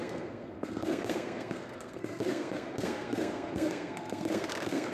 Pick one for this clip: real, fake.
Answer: fake